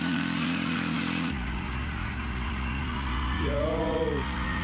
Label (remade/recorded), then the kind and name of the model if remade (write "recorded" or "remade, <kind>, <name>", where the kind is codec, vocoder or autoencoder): remade, vocoder, Vocos